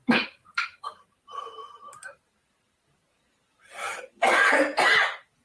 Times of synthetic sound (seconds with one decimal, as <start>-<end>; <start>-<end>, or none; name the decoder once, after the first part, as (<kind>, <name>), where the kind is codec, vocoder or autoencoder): 0.0-3.2 (vocoder, BigVGAN v2)